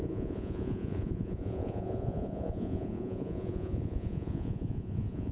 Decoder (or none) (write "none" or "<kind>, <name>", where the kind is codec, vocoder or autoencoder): vocoder, Vocos